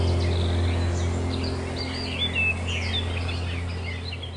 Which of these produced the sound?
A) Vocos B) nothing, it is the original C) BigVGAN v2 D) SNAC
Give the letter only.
B